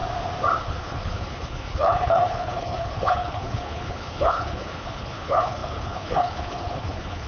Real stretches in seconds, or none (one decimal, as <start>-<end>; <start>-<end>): 0.0-0.6